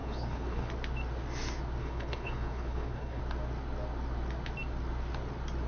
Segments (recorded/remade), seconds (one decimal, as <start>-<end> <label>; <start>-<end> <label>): 0.0-0.7 remade; 0.7-1.8 recorded; 1.8-3.2 remade; 3.2-5.7 recorded

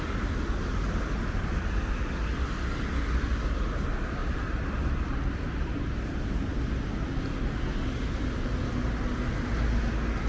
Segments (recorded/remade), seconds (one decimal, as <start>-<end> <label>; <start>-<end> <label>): 0.0-4.2 recorded; 4.2-6.5 remade; 6.5-10.3 recorded

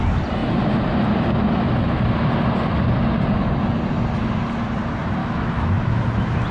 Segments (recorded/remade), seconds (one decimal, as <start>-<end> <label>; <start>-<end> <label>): 0.0-5.2 recorded; 5.2-6.0 remade; 6.0-6.5 recorded

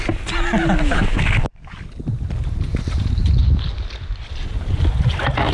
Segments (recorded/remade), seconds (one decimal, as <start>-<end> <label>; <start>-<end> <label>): 0.0-5.5 recorded